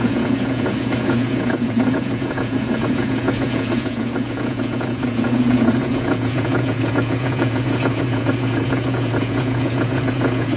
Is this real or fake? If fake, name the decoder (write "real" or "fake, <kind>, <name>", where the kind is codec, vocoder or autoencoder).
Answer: fake, vocoder, Vocos